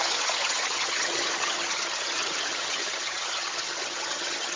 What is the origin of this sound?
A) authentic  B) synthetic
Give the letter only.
B